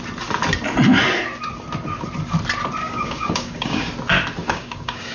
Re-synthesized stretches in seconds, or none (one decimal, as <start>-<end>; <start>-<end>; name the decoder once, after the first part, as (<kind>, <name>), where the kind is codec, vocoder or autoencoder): 2.8-3.9 (codec, DAC); 4.4-5.1

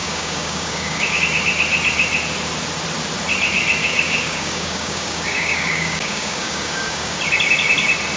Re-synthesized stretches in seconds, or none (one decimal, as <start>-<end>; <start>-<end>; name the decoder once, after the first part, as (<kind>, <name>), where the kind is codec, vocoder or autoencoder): 0.0-1.2 (codec, DAC); 3.8-7.2